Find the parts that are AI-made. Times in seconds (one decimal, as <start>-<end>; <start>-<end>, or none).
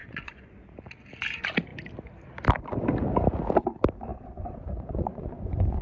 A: 0.0-0.5; 4.1-5.8